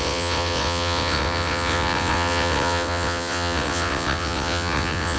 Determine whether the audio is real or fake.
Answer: fake